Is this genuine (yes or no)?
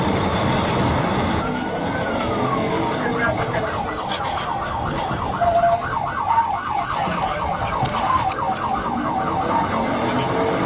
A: yes